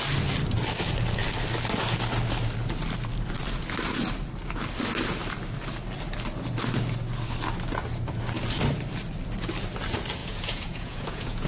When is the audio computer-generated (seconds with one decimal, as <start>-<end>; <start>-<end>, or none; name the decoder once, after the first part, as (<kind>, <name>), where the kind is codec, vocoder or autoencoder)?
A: 10.2-11.5 (vocoder, Vocos)

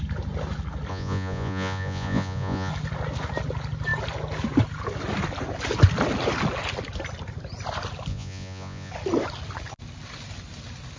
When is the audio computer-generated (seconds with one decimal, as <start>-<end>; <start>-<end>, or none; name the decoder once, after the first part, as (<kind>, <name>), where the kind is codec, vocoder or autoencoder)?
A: 0.9-2.7 (vocoder, Vocos); 8.1-8.9

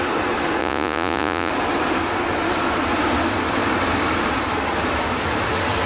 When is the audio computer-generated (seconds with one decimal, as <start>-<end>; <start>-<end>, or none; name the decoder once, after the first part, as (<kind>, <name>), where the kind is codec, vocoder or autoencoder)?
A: 0.6-1.5 (vocoder, Vocos)

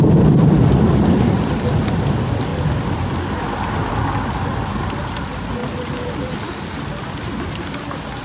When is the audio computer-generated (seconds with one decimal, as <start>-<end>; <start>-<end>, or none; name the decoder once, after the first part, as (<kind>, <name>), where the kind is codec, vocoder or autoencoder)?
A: none

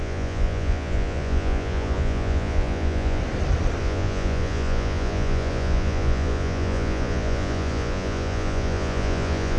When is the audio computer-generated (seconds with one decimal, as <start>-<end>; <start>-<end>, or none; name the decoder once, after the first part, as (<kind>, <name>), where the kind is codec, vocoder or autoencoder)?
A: 0.0-3.2 (vocoder, Vocos); 3.8-9.6

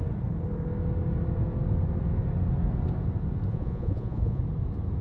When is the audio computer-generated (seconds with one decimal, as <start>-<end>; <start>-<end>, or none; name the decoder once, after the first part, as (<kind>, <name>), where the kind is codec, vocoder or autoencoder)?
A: 3.5-4.4 (vocoder, Vocos)

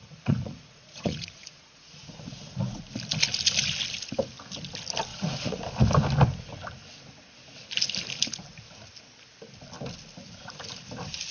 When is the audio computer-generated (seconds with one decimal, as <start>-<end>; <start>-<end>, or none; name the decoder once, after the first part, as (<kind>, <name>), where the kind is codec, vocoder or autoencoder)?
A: 0.0-2.8 (vocoder, Vocos); 5.1-5.6

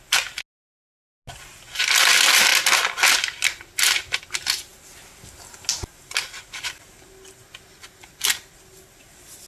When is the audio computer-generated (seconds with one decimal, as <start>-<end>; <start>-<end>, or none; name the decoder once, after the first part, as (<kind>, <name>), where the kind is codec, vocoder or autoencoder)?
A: none